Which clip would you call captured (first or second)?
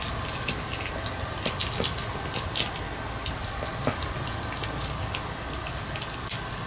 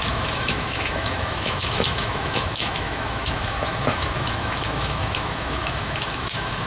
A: first